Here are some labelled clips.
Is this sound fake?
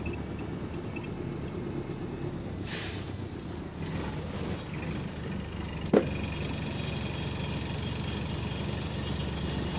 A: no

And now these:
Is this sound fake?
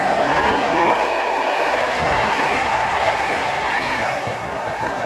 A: yes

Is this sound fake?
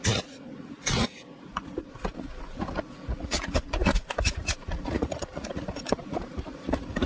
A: yes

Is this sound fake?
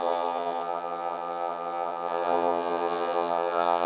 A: yes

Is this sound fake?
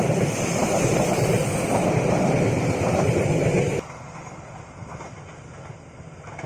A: no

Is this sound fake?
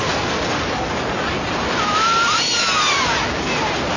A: no